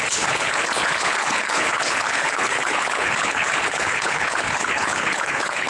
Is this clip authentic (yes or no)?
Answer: no